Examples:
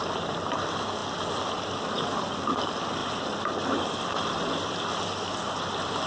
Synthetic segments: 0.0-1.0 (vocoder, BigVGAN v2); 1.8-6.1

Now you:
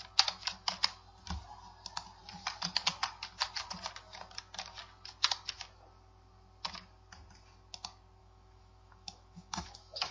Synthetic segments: 8.2-10.1 (autoencoder, DAC-VAE)

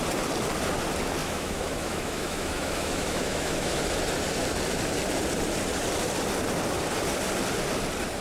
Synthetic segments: 1.2-3.8 (autoencoder, DAC-VAE)